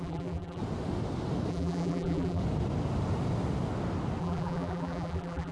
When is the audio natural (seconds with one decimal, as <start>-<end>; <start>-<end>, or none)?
0.6-1.5; 2.4-4.2